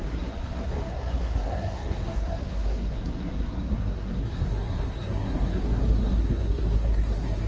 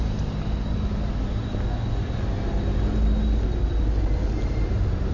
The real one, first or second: second